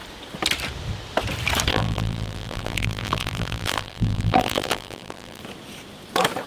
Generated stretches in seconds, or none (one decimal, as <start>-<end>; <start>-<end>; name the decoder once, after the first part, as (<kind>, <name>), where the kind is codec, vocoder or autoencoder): 1.7-5.4 (vocoder, BigVGAN v2)